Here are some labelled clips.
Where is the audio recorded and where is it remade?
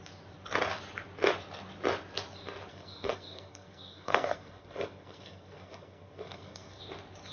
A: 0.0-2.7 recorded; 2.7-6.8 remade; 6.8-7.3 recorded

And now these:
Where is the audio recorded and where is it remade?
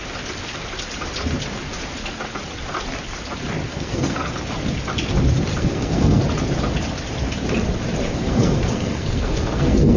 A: 0.0-3.7 recorded; 3.7-4.3 remade; 4.3-5.5 recorded; 5.5-6.2 remade; 6.2-8.0 recorded; 8.0-10.0 remade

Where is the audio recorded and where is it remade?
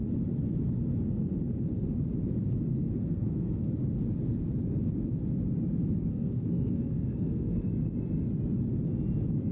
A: 0.0-2.7 recorded; 2.7-3.7 remade; 3.7-6.1 recorded; 6.1-7.7 remade; 7.7-9.5 recorded